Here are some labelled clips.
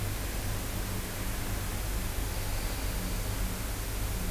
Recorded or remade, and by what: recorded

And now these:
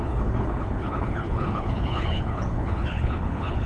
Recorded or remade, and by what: remade, codec, HILCodec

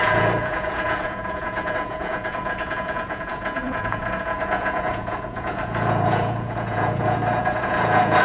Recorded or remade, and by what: remade, vocoder, Vocos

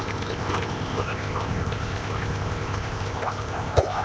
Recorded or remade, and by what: remade, codec, ZipCodec